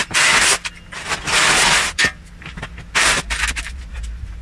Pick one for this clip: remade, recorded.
recorded